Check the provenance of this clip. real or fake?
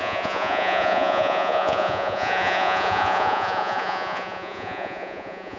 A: fake